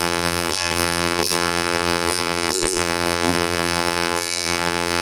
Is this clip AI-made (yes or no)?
yes